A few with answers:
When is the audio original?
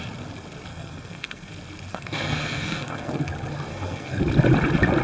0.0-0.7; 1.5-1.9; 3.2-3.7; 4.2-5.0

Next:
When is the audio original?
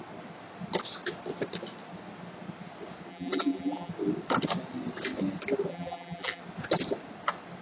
0.0-3.1; 3.9-5.7; 6.4-7.6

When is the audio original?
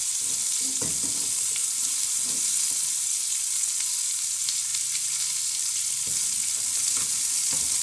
0.0-7.8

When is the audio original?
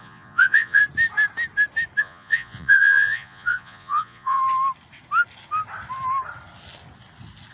0.8-2.0; 4.4-7.5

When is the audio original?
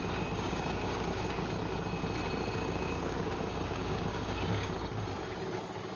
1.6-2.5; 4.8-6.0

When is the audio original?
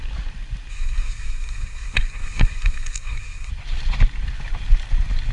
0.0-0.7; 3.5-5.3